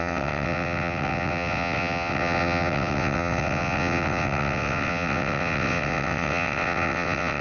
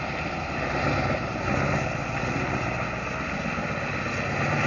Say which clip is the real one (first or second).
second